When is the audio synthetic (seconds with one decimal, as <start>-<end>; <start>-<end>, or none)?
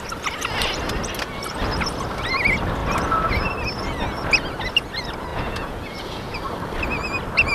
5.3-6.4